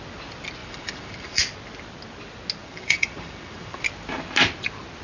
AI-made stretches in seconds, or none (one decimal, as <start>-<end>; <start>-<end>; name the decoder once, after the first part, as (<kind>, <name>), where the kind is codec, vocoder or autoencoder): 0.6-1.4 (vocoder, BigVGAN v2); 2.6-3.8